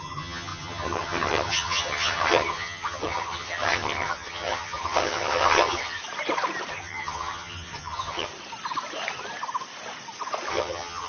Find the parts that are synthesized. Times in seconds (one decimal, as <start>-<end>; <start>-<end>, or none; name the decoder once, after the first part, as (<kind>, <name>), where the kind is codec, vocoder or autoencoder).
0.0-6.0 (vocoder, HiFi-GAN); 6.7-8.3; 10.5-11.1